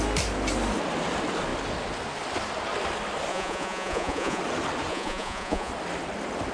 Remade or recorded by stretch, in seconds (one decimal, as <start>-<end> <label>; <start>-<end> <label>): 0.0-3.3 recorded; 3.3-4.4 remade; 4.4-4.9 recorded; 4.9-5.7 remade; 5.7-6.5 recorded